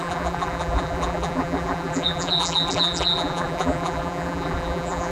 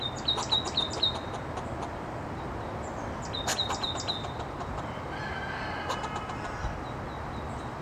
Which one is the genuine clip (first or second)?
second